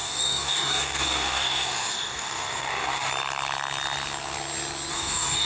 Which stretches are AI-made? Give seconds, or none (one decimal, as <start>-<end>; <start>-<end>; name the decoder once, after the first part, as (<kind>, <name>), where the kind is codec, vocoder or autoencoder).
0.0-3.1 (codec, DAC); 4.9-5.4